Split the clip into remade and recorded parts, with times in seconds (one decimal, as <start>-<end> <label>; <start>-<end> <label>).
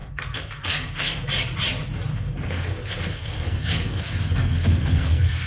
0.0-1.3 remade; 1.3-2.1 recorded; 2.1-5.5 remade